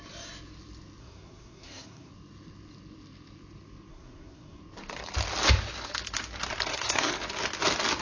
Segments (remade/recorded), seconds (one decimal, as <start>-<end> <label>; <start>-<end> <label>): 0.0-1.0 recorded; 1.0-2.1 remade; 2.1-3.9 recorded; 3.9-4.6 remade; 4.6-6.7 recorded; 6.7-7.2 remade; 7.2-8.0 recorded